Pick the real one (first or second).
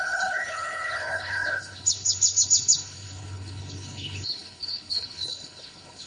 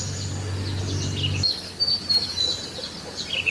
second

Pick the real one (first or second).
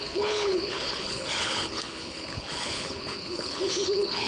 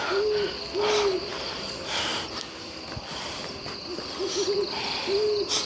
second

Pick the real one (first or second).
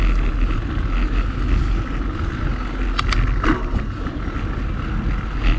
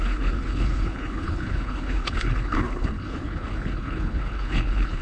first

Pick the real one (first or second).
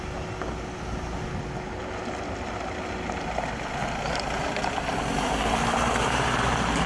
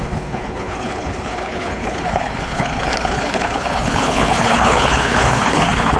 first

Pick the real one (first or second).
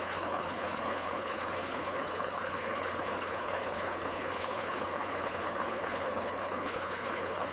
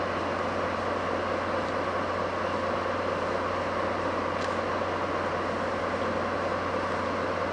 second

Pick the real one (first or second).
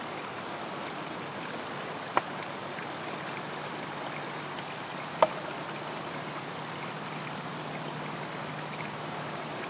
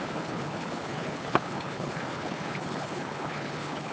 first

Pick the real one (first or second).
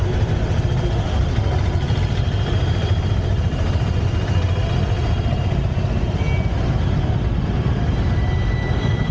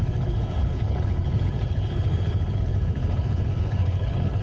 first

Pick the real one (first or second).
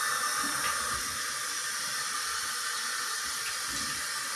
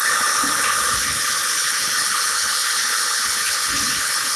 first